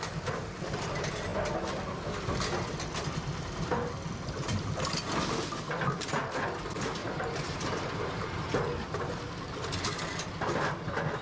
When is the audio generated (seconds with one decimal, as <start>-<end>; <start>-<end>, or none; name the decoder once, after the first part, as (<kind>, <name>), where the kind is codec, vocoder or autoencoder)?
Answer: 7.0-8.5 (vocoder, BigVGAN v2)

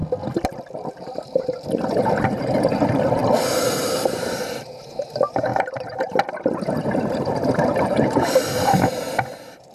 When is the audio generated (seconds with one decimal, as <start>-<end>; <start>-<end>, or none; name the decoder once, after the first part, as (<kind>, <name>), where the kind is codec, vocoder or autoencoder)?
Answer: 0.8-3.2 (vocoder, BigVGAN v2); 3.8-9.7